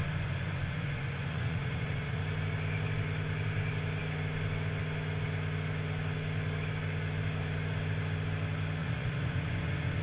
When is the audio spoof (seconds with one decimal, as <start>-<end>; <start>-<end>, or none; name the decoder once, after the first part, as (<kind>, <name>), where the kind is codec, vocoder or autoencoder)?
0.0-2.2 (vocoder, Vocos); 8.8-10.0